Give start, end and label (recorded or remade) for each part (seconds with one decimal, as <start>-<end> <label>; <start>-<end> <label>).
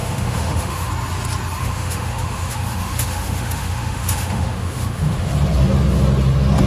0.0-0.9 remade; 0.9-1.6 recorded; 1.6-5.3 remade; 5.3-6.7 recorded